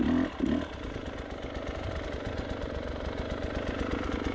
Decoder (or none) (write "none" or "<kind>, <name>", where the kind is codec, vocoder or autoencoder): none